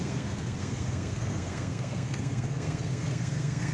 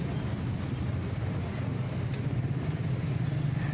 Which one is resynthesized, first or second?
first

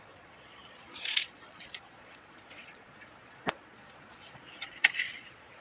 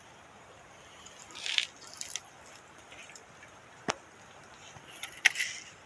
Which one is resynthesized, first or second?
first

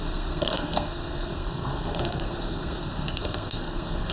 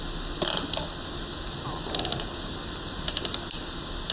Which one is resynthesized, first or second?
first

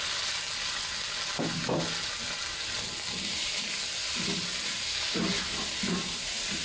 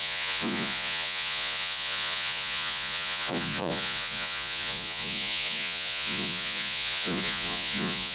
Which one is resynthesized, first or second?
second